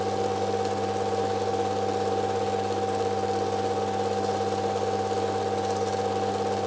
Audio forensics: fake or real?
real